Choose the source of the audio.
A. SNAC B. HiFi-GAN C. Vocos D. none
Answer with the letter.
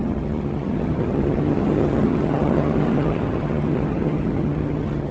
B